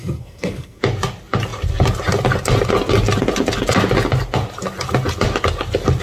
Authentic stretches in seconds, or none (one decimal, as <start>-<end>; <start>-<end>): 0.8-6.0